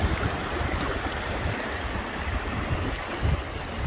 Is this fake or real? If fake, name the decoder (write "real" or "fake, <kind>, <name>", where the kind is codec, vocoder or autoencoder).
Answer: real